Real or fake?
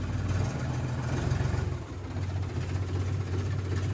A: real